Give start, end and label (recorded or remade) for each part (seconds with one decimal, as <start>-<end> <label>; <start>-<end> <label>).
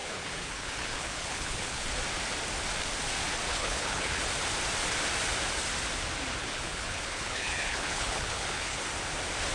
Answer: 0.0-1.9 remade; 1.9-3.5 recorded; 3.5-4.2 remade; 4.2-6.4 recorded; 6.4-8.8 remade; 8.8-9.5 recorded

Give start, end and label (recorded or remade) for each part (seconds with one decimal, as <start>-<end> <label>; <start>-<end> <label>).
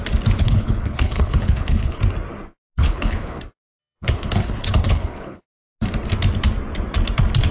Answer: 0.0-0.4 recorded; 0.4-2.0 remade; 2.0-2.8 recorded; 2.8-3.4 remade; 3.4-3.8 recorded; 3.8-5.4 remade; 5.4-7.5 recorded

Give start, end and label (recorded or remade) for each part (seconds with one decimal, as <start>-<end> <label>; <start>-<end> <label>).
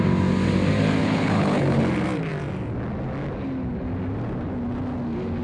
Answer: 0.0-1.0 recorded; 1.0-1.8 remade; 1.8-5.4 recorded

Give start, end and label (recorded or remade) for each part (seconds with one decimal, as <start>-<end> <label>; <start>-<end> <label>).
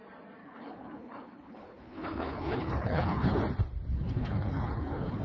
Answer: 0.0-0.4 recorded; 0.4-3.4 remade; 3.4-3.9 recorded; 3.9-5.2 remade